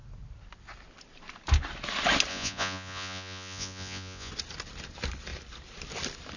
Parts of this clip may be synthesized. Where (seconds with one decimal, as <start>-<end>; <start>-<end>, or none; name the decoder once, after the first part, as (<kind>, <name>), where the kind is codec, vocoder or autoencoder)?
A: 2.3-4.3 (vocoder, Vocos)

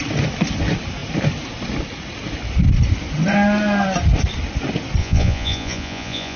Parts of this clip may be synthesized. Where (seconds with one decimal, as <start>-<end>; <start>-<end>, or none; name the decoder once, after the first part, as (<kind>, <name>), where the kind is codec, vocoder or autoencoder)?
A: 5.0-6.4 (vocoder, Vocos)

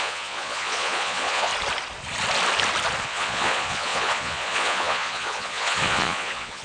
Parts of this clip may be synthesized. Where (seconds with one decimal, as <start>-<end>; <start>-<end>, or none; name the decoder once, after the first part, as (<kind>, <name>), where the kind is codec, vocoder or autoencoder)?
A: 0.0-1.5 (vocoder, Vocos); 3.0-6.6

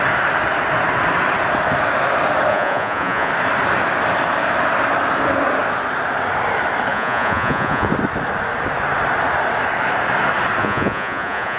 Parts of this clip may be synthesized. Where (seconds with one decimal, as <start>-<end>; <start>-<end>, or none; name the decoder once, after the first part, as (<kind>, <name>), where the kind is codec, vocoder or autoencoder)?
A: 2.5-3.3 (vocoder, Vocos); 6.9-7.9; 10.6-11.6

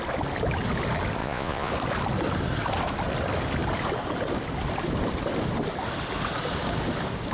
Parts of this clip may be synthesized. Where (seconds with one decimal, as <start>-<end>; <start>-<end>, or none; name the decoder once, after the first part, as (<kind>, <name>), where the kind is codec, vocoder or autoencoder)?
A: 1.2-1.7 (vocoder, Vocos)

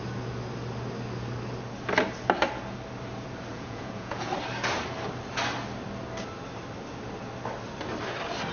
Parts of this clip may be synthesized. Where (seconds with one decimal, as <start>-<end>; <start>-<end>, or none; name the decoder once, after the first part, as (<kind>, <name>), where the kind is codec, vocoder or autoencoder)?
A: 3.5-4.3 (vocoder, Vocos)

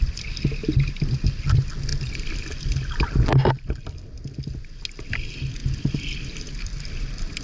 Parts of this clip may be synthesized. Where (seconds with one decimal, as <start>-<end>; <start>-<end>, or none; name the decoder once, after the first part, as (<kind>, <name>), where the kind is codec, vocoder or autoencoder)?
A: none